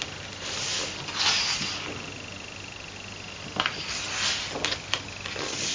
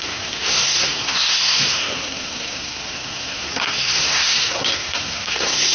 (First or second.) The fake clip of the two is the second